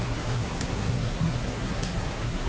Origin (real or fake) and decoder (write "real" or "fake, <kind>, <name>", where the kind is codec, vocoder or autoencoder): fake, codec, SNAC